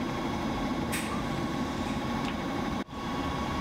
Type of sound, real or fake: fake